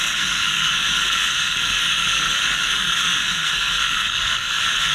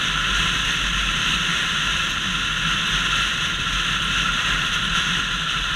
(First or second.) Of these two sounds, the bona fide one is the second